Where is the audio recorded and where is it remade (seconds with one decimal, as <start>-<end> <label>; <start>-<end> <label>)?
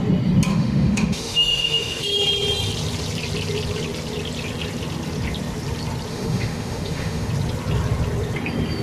0.0-0.5 recorded; 0.5-2.0 remade; 2.0-6.1 recorded; 6.1-7.3 remade; 7.3-8.8 recorded